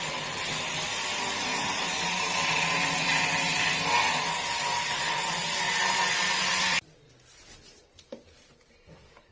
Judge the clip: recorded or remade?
recorded